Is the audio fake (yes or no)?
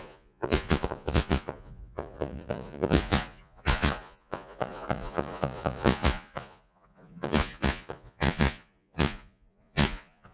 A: yes